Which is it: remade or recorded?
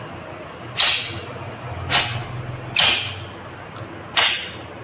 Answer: recorded